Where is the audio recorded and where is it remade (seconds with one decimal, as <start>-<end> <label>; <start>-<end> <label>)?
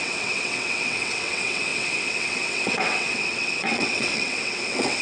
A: 0.0-5.0 remade